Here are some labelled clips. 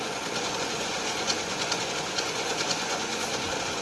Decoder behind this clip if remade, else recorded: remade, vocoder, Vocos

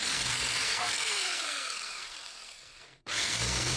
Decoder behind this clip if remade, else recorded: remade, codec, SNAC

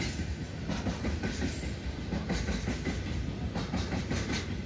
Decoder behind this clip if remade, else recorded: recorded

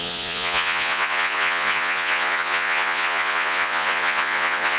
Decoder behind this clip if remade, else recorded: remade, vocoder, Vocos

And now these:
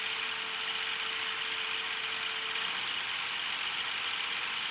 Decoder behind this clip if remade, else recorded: recorded